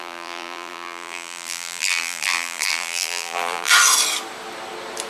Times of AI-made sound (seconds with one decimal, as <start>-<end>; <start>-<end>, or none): 0.0-3.7